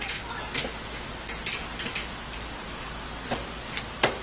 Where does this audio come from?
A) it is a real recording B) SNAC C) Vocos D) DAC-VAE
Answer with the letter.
A